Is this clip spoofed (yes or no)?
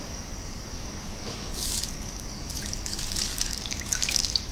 yes